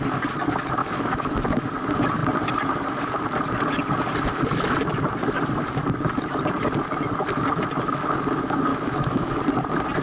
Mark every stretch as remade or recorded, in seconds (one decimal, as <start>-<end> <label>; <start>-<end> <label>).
0.0-0.8 recorded; 0.8-1.7 remade; 1.7-8.7 recorded; 8.7-9.4 remade; 9.4-10.0 recorded